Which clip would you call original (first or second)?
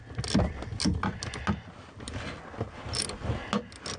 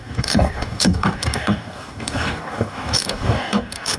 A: first